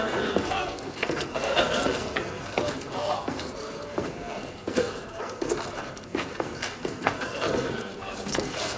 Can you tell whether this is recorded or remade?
remade